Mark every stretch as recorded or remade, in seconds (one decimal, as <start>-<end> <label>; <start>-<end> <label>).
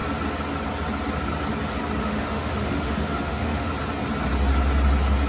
0.0-2.0 recorded; 2.0-3.7 remade; 3.7-5.3 recorded